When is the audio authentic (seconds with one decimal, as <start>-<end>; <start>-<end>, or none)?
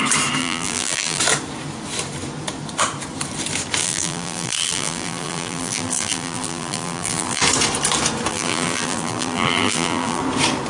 0.0-0.4; 1.2-3.8; 7.4-8.3; 10.2-10.7